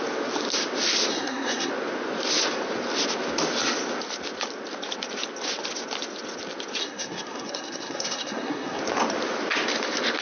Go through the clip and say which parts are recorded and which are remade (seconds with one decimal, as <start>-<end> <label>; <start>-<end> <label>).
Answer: 0.0-1.1 recorded; 1.1-1.7 remade; 1.7-6.8 recorded; 6.8-8.8 remade; 8.8-10.2 recorded